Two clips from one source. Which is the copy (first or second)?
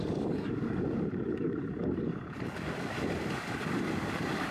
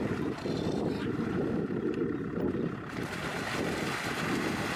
first